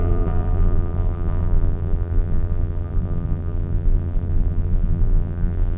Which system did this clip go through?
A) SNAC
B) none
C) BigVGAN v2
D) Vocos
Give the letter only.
C